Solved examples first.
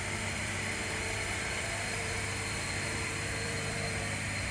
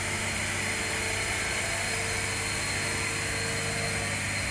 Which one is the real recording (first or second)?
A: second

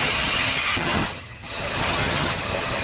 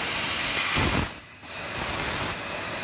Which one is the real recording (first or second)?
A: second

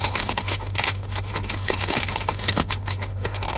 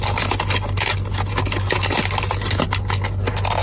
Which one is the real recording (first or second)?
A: second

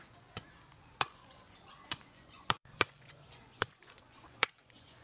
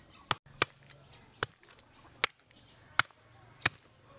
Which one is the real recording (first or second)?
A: second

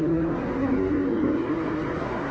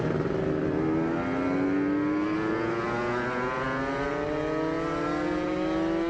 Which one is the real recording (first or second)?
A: second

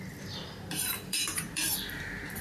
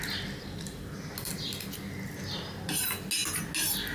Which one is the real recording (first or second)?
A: second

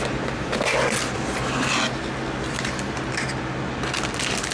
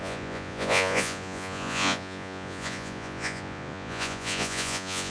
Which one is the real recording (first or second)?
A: first